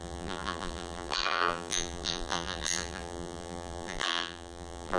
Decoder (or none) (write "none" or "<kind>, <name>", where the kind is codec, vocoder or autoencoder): vocoder, BigVGAN v2